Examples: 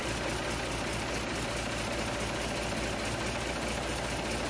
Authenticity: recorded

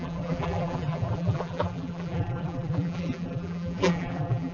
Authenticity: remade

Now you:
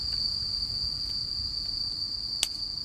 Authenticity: recorded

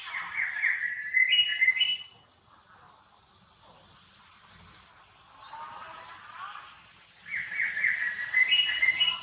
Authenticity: recorded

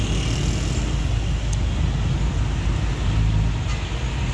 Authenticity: recorded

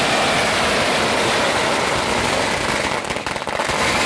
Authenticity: recorded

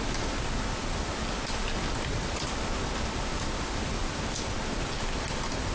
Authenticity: recorded